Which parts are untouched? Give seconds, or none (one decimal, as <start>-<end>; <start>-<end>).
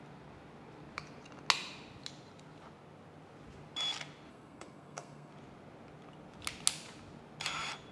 0.0-4.3; 5.3-7.9